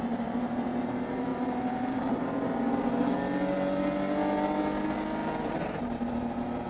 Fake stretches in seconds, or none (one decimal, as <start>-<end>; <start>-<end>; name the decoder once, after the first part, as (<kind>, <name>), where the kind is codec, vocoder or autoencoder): 1.3-2.2 (vocoder, BigVGAN v2); 5.2-5.8